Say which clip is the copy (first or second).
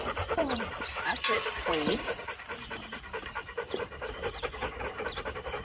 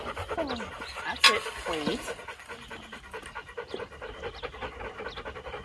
first